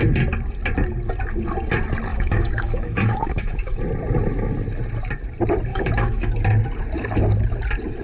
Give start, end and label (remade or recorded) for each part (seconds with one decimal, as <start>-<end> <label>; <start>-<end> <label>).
0.0-2.1 recorded; 2.1-3.8 remade; 3.8-5.7 recorded; 5.7-6.3 remade; 6.3-8.0 recorded